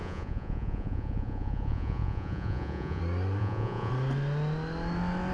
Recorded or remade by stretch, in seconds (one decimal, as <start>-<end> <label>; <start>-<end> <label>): 0.0-3.0 remade; 3.0-3.4 recorded; 3.4-3.9 remade; 3.9-5.3 recorded